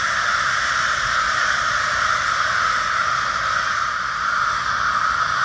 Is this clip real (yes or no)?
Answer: yes